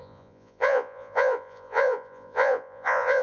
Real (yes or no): no